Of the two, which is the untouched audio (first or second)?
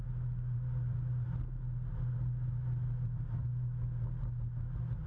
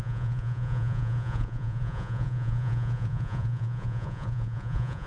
first